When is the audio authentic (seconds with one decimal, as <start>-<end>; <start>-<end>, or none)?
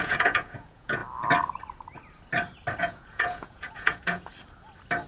1.0-2.8; 4.3-5.1